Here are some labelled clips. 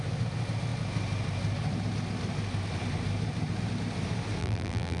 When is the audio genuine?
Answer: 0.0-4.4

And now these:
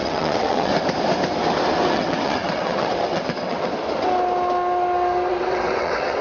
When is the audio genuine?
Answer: 0.7-1.9; 3.7-5.3

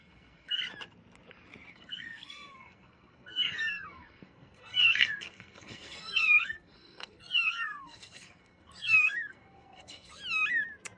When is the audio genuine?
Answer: 0.6-1.7; 10.2-11.0

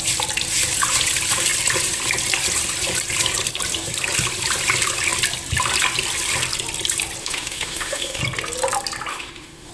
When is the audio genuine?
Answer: 0.0-7.2; 8.2-9.1

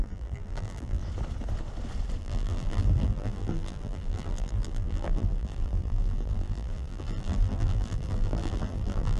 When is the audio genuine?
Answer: 1.0-2.2

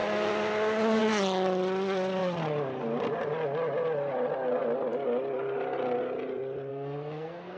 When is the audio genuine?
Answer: 0.0-6.7

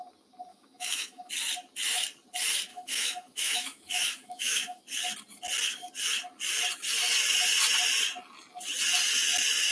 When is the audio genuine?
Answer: 0.0-0.5; 1.3-2.7; 4.8-9.7

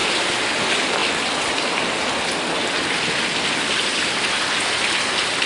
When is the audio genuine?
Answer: 0.0-5.5